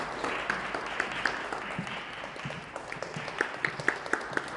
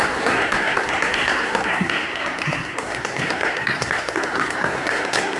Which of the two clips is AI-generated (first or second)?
second